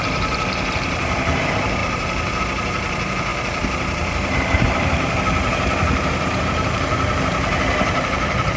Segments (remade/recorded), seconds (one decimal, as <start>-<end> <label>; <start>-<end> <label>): 0.0-8.6 remade